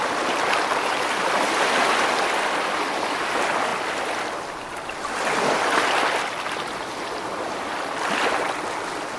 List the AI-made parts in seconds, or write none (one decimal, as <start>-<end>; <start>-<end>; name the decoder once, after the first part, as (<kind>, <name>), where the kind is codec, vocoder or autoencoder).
none